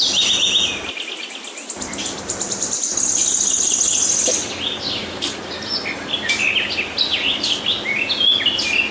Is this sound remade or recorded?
recorded